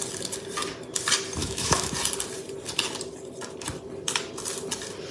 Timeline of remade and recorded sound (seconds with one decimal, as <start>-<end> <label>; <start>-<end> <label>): 0.0-1.4 recorded; 1.4-1.9 remade; 1.9-5.1 recorded

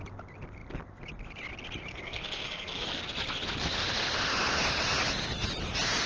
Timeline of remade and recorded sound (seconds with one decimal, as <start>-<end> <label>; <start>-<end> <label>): 0.0-1.9 recorded; 1.9-3.0 remade; 3.0-6.1 recorded

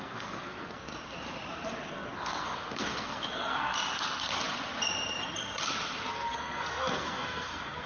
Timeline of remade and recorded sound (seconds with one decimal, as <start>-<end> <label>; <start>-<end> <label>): 0.0-0.9 remade; 0.9-1.9 recorded; 1.9-3.7 remade; 3.7-6.1 recorded; 6.1-7.9 remade

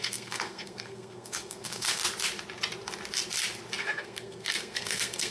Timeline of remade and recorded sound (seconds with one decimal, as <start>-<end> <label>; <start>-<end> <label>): 0.0-2.0 remade; 2.0-3.8 recorded; 3.8-5.3 remade

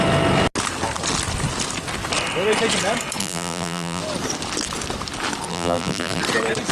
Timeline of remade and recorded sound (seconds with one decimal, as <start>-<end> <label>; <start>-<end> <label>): 0.0-3.2 recorded; 3.2-4.0 remade; 4.0-5.5 recorded; 5.5-6.2 remade; 6.2-6.7 recorded

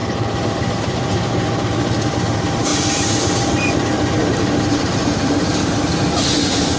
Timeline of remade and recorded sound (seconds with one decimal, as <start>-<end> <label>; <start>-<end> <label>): 0.0-1.3 remade; 1.3-2.7 recorded; 2.7-3.7 remade; 3.7-4.2 recorded; 4.2-5.5 remade; 5.5-6.8 recorded

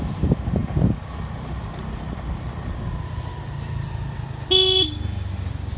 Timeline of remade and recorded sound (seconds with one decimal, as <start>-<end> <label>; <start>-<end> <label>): 0.0-5.8 recorded

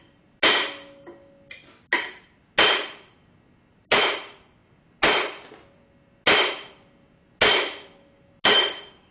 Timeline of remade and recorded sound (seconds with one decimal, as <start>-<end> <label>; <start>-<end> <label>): 0.0-9.1 recorded